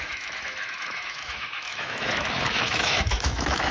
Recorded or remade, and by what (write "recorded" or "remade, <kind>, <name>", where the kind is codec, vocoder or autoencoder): remade, autoencoder, DAC-VAE